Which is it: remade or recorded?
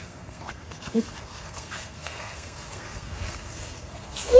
remade